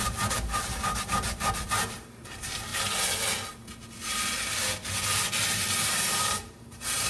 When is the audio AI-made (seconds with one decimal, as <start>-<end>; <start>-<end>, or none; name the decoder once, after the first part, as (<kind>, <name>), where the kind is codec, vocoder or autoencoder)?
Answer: 0.0-2.7 (vocoder, BigVGAN v2); 5.8-7.1